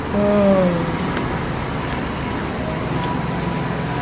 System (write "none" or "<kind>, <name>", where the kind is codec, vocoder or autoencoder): none